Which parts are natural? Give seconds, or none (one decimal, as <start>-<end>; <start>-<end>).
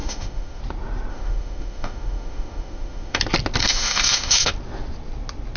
0.6-1.1; 3.2-3.6; 4.5-5.6